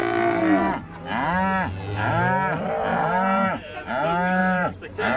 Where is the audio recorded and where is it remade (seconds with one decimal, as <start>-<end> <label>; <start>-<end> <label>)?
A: 0.0-2.9 recorded; 2.9-3.9 remade; 3.9-4.4 recorded; 4.4-5.2 remade

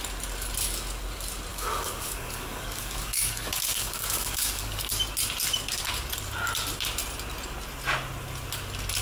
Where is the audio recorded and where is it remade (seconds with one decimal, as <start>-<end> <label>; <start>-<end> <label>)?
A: 0.0-1.5 recorded; 1.5-4.9 remade; 4.9-9.0 recorded

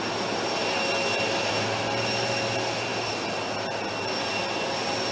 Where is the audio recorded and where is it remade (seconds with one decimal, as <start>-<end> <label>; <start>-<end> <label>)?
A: 0.0-5.1 recorded

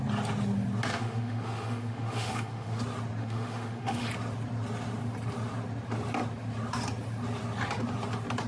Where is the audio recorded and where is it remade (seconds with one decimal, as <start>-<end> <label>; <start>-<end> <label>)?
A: 0.0-0.9 recorded; 0.9-2.8 remade; 2.8-3.2 recorded; 3.2-4.1 remade; 4.1-8.5 recorded

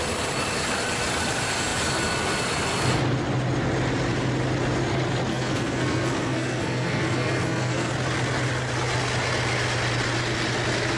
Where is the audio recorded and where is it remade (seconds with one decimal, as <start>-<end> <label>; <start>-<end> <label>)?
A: 0.0-5.3 recorded; 5.3-7.9 remade; 7.9-11.0 recorded

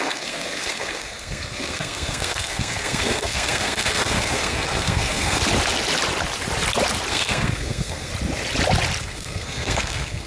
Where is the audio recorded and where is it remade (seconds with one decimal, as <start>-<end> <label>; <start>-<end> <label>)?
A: 0.0-5.4 remade; 5.4-7.1 recorded; 7.1-8.1 remade; 8.1-9.0 recorded; 9.0-10.3 remade